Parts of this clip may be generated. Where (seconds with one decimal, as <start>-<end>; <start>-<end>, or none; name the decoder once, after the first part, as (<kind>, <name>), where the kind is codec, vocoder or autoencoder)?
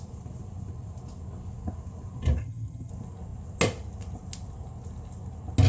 2.4-2.9 (vocoder, HiFi-GAN)